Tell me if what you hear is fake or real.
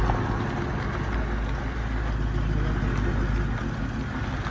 real